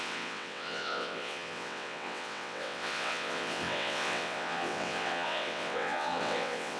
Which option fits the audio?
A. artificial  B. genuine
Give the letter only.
A